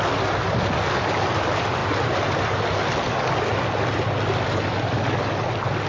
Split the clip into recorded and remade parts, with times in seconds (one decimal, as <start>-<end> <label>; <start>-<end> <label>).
0.0-5.9 recorded